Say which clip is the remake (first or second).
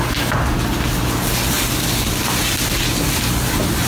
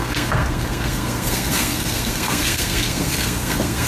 second